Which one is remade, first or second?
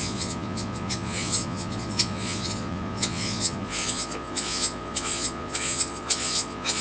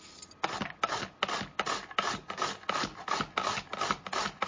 first